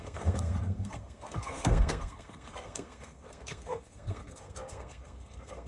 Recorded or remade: remade